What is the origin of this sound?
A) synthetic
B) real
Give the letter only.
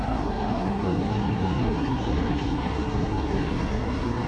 A